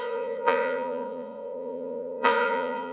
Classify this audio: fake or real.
fake